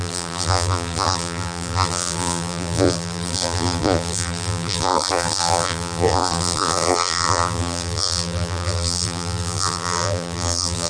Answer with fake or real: fake